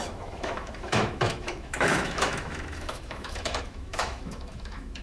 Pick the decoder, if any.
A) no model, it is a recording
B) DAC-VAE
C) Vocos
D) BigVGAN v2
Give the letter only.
B